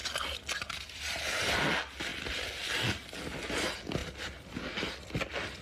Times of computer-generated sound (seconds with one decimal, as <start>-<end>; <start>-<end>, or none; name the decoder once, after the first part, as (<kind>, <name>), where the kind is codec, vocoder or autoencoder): none

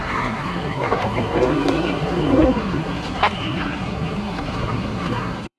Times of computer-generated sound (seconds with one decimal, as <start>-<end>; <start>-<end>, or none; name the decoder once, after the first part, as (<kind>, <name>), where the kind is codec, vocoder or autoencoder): 0.0-5.6 (codec, SNAC)

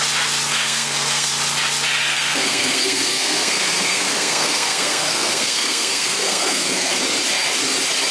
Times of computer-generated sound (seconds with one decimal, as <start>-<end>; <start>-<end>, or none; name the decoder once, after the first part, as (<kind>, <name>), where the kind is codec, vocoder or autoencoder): 0.5-1.3 (codec, SNAC); 2.0-6.9

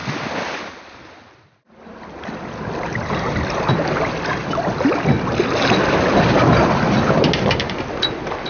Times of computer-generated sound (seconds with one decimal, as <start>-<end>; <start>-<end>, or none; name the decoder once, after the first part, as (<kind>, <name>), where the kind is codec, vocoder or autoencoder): none